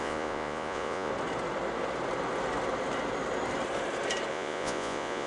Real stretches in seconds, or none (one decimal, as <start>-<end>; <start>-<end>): 1.1-4.3